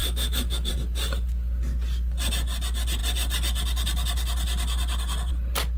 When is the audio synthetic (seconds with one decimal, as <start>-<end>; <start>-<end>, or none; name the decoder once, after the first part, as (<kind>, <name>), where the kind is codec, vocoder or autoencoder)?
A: 0.0-0.7 (autoencoder, DAC-VAE)

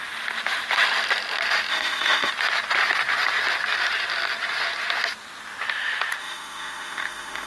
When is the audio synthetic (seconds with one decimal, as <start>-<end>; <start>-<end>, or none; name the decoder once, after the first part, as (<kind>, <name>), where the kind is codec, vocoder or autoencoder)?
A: 1.7-2.3 (autoencoder, DAC-VAE); 6.2-7.5

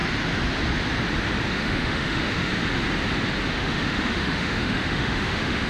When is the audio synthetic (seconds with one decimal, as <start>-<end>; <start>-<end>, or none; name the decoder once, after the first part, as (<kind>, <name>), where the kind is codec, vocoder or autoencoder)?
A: 1.5-2.5 (autoencoder, DAC-VAE); 3.5-5.7

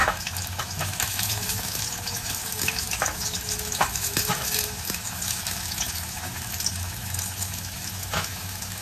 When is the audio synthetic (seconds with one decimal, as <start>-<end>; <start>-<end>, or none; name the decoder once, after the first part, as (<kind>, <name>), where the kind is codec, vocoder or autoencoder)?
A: 0.0-8.8 (autoencoder, DAC-VAE)

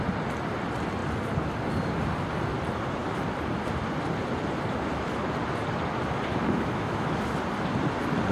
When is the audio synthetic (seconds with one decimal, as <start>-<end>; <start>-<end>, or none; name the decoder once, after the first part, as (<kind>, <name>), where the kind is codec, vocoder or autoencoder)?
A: 6.3-7.3 (autoencoder, DAC-VAE)

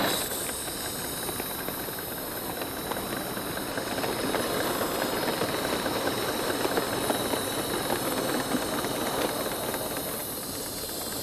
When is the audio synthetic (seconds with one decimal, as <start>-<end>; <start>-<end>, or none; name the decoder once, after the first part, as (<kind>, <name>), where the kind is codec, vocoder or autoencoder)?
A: none

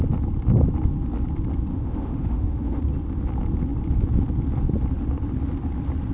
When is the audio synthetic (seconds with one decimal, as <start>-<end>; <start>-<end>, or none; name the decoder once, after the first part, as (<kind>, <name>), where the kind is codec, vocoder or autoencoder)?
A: 1.7-2.8 (autoencoder, DAC-VAE)